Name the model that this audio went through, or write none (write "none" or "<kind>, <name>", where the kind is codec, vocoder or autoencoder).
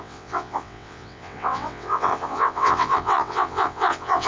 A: vocoder, WaveNeXt